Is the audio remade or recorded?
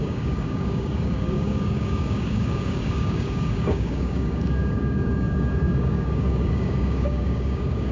remade